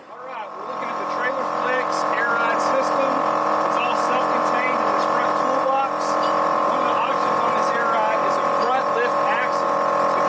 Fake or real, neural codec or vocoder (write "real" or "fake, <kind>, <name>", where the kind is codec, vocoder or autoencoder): fake, vocoder, BigVGAN v2